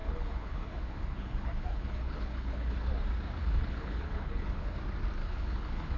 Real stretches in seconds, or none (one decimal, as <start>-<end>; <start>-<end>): 2.9-3.4; 4.8-5.2